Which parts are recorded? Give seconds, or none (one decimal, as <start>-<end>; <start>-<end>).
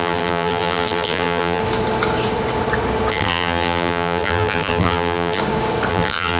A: 1.6-3.1; 5.4-5.9